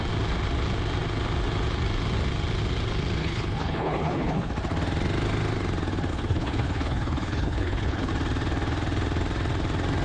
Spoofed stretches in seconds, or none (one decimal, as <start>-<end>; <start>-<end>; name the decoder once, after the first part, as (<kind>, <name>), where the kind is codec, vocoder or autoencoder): 3.2-4.5 (codec, HILCodec); 6.1-8.1